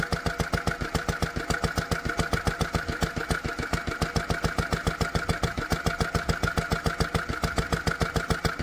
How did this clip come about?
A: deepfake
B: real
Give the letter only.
B